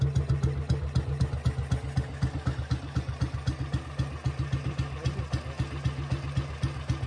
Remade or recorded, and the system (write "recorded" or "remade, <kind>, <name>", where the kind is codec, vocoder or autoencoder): recorded